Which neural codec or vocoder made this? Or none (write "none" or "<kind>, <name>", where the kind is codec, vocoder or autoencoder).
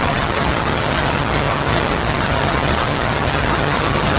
vocoder, HiFi-GAN